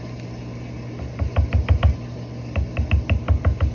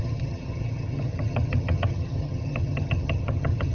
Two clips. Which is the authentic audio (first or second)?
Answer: first